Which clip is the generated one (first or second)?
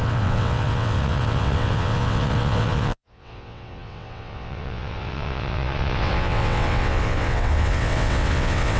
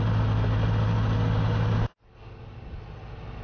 first